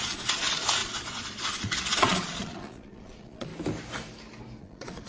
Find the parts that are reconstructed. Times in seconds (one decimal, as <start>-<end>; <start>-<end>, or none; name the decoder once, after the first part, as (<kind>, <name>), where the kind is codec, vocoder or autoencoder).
0.0-3.5 (vocoder, Vocos); 4.6-5.1